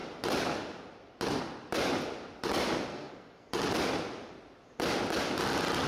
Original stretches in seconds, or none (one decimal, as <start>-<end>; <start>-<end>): 0.0-2.9; 3.5-5.9